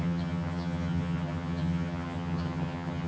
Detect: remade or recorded remade